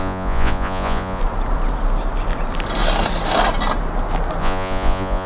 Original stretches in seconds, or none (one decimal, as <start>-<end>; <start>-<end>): 1.2-4.4